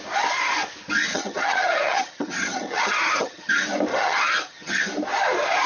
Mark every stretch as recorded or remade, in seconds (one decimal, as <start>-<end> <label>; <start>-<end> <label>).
0.0-1.1 recorded; 1.1-3.5 remade; 3.5-3.9 recorded; 3.9-4.8 remade; 4.8-5.7 recorded